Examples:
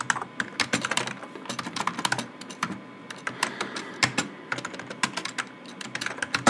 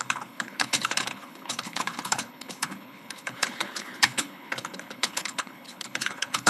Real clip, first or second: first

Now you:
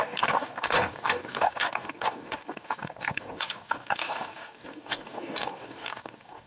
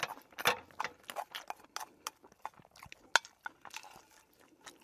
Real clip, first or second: second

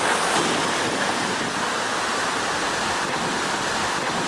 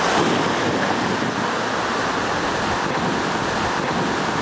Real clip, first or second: second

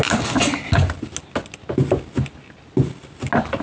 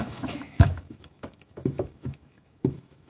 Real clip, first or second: first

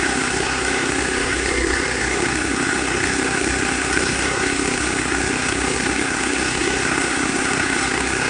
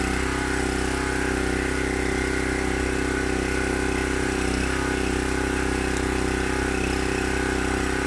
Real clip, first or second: second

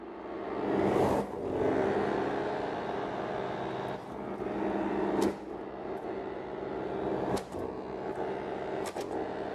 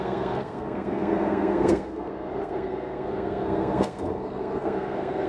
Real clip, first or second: first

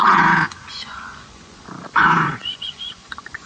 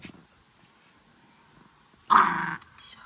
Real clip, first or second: second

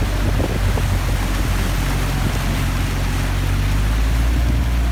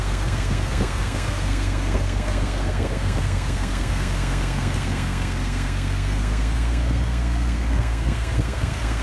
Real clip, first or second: first